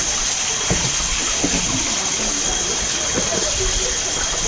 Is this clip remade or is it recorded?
recorded